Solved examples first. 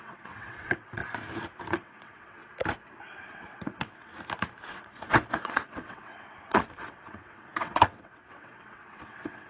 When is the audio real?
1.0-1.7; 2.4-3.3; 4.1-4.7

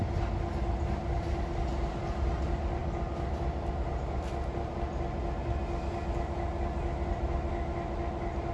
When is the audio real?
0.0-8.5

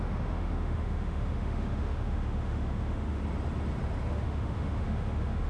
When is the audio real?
3.2-4.1

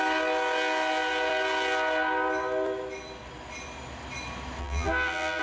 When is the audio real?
0.0-4.6